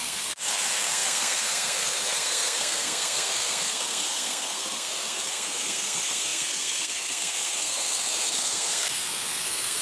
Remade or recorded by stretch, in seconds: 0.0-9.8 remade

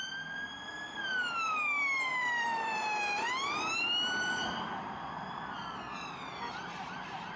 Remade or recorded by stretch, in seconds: 0.0-7.4 remade

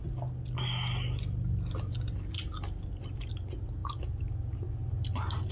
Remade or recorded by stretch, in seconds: 0.0-5.5 recorded

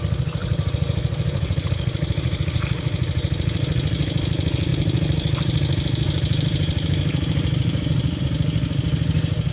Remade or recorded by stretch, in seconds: 0.0-0.4 recorded; 0.4-1.7 remade; 1.7-4.7 recorded; 4.7-8.2 remade; 8.2-9.5 recorded

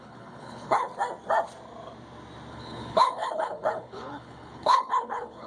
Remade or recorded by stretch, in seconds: 0.0-0.9 remade; 0.9-2.5 recorded; 2.5-5.5 remade

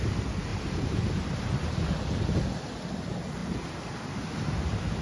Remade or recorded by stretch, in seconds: 0.0-0.5 recorded; 0.5-1.8 remade; 1.8-5.0 recorded

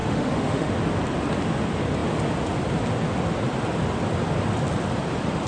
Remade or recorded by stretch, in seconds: 0.0-0.7 remade; 0.7-5.5 recorded

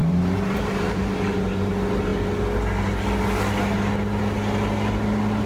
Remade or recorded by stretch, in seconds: 0.0-1.7 remade; 1.7-5.5 recorded